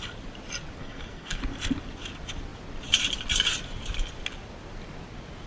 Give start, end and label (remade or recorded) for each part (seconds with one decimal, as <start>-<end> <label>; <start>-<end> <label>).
0.0-0.8 recorded; 0.8-1.4 remade; 1.4-5.5 recorded